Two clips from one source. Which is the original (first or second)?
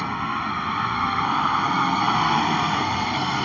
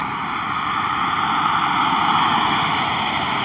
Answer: second